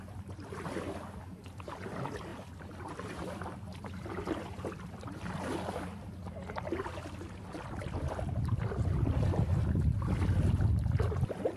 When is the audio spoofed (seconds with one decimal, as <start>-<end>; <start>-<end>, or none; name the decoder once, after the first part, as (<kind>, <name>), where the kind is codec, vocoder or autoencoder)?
none